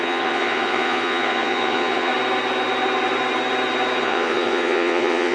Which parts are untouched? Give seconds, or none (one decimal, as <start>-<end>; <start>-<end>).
2.1-4.0